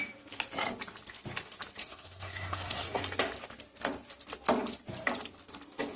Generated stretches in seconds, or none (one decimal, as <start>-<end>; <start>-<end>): 1.8-3.0